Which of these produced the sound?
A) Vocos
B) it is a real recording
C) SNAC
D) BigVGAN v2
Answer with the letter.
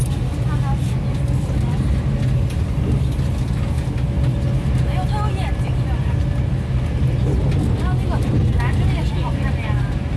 B